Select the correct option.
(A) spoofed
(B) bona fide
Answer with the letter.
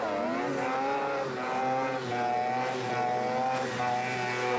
B